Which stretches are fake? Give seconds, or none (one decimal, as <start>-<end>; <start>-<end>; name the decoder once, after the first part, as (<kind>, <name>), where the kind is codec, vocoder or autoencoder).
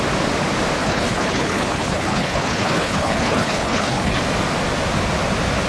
0.8-4.2 (codec, HILCodec)